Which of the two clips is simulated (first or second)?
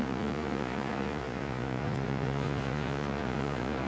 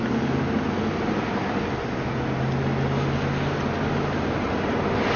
first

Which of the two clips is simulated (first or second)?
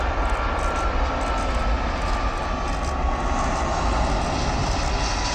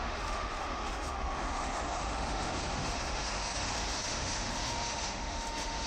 second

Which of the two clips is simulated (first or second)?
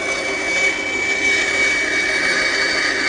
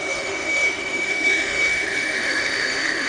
second